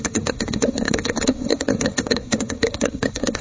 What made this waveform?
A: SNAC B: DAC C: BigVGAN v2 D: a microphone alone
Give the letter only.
A